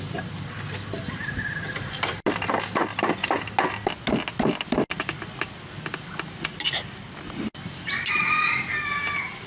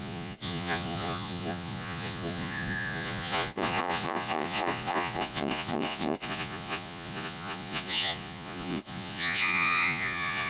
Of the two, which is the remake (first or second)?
second